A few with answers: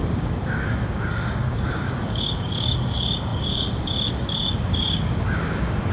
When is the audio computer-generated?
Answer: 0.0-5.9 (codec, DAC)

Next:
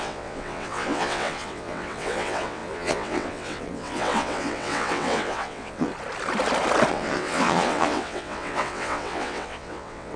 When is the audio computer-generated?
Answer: 0.0-5.9 (vocoder, WaveNeXt); 6.9-10.2

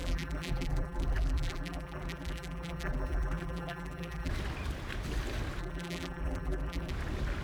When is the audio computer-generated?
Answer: 0.0-4.3 (vocoder, BigVGAN v2); 5.6-6.9

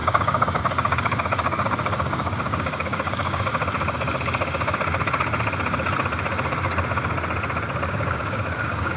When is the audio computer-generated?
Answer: 0.0-3.5 (codec, DAC); 7.9-9.0

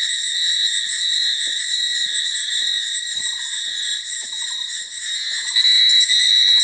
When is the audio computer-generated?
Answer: none

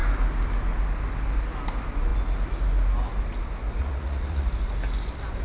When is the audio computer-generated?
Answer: 3.8-4.5 (vocoder, Vocos)

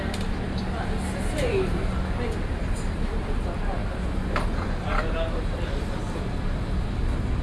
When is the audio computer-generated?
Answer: none